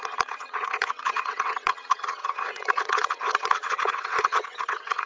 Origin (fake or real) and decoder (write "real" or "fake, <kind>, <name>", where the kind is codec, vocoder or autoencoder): fake, vocoder, WaveNeXt